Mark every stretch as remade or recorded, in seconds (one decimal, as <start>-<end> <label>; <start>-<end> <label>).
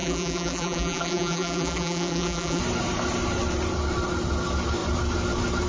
0.0-2.6 remade; 2.6-5.7 recorded